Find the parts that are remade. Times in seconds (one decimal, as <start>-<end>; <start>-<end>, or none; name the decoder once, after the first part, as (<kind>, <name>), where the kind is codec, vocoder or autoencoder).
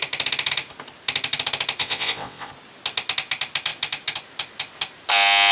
1.8-2.5 (vocoder, WaveNeXt)